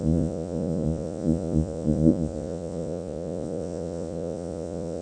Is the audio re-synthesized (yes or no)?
yes